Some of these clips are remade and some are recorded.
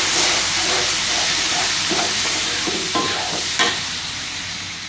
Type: remade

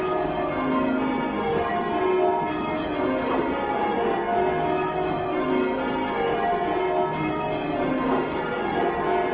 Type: recorded